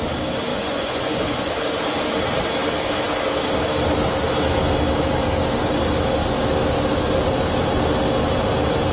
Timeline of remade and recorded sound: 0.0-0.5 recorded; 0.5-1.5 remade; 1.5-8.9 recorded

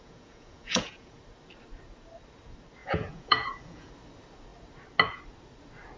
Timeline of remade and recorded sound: 0.0-1.2 remade; 1.2-2.8 recorded; 2.8-3.9 remade; 3.9-6.0 recorded

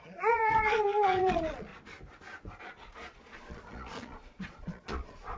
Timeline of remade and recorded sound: 0.0-1.7 remade; 1.7-2.6 recorded; 2.6-5.4 remade